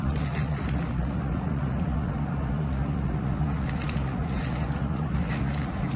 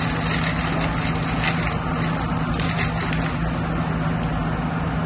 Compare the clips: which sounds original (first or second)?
second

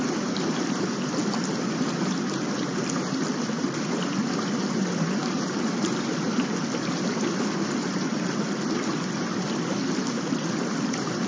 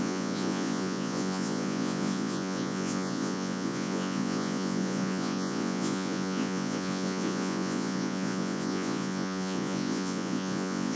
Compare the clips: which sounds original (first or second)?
first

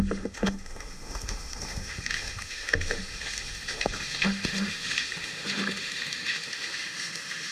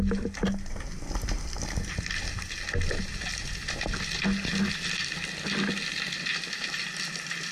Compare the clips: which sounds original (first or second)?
second